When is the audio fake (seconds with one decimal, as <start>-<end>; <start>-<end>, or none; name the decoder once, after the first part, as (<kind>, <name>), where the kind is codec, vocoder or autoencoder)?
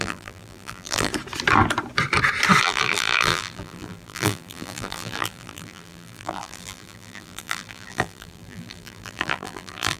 0.0-1.1 (vocoder, BigVGAN v2); 2.6-10.0